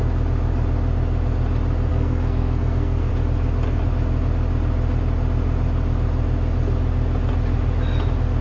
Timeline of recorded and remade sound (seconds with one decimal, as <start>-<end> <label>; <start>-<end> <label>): 0.0-1.9 recorded; 1.9-3.1 remade; 3.1-8.4 recorded